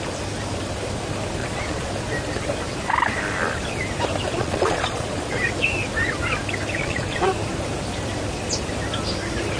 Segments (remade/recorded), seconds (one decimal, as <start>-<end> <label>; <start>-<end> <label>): 0.0-1.4 recorded; 1.4-1.9 remade; 1.9-4.3 recorded; 4.3-5.3 remade; 5.3-6.8 recorded; 6.8-7.3 remade; 7.3-9.6 recorded